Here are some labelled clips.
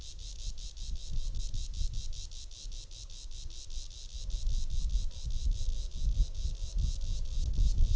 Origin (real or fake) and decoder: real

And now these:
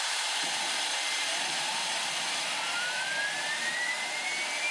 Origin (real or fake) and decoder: fake, vocoder, BigVGAN v2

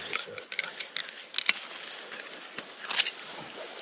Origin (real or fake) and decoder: real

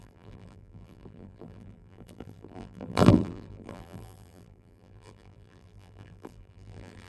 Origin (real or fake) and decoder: fake, vocoder, BigVGAN v2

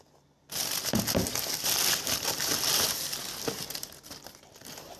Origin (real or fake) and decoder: real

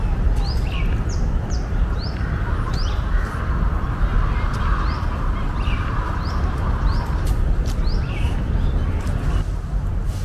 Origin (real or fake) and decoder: real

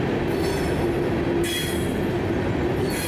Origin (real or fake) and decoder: real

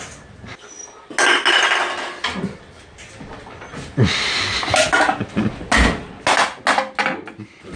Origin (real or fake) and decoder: real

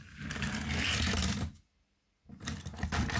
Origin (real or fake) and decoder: real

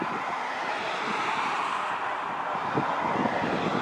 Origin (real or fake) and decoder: real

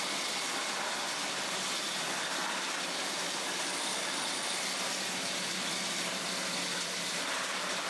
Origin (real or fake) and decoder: fake, vocoder, BigVGAN v2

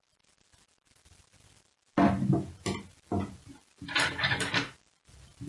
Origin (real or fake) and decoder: real